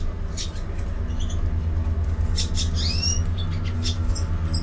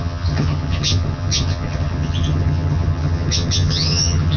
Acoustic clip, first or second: first